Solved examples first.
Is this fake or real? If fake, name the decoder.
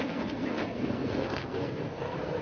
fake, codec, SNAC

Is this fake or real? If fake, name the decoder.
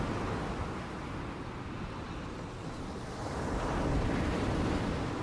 real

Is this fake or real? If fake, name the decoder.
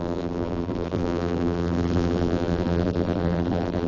fake, vocoder, BigVGAN v2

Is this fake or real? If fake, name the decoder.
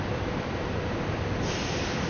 real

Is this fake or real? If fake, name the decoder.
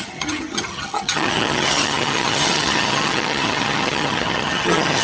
fake, vocoder, HiFi-GAN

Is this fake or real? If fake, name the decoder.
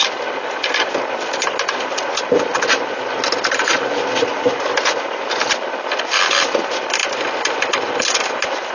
real